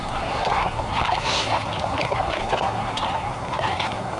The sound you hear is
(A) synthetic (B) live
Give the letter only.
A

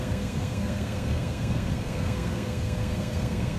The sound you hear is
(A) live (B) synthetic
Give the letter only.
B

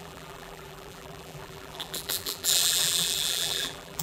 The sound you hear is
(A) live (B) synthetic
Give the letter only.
B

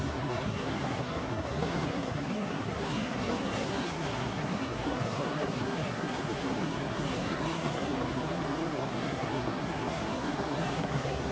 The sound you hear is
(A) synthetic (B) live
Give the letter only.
A